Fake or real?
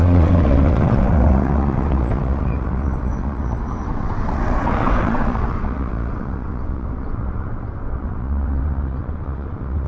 fake